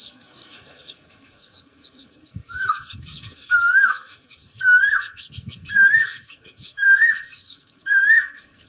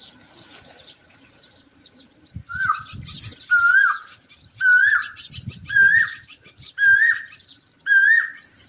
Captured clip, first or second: second